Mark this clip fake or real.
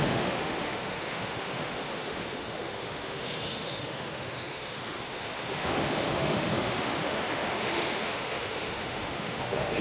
fake